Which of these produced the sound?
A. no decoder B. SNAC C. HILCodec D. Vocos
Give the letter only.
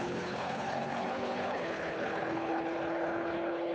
C